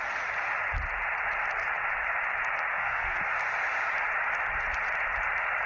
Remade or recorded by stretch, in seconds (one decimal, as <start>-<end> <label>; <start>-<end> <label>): 0.0-2.7 recorded; 2.7-3.2 remade; 3.2-5.7 recorded